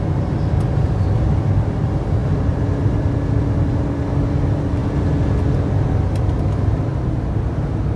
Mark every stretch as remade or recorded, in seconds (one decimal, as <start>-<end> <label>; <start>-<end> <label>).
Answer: 0.0-8.0 recorded